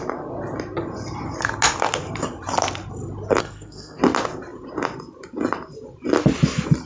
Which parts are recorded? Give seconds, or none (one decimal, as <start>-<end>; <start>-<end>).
0.0-3.4; 4.0-6.9